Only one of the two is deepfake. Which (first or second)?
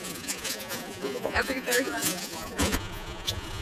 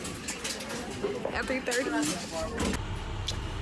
first